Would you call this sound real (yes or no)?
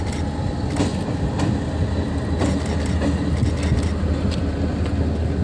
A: yes